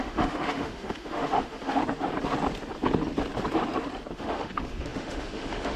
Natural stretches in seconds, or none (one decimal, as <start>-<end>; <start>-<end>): 1.8-4.1